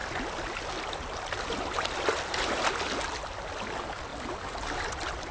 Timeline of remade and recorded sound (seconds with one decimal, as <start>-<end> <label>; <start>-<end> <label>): 0.0-5.3 recorded